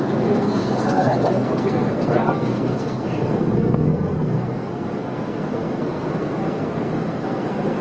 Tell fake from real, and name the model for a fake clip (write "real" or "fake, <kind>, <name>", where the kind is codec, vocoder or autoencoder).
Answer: fake, codec, SNAC